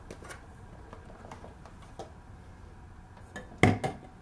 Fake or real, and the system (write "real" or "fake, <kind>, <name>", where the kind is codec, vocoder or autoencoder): real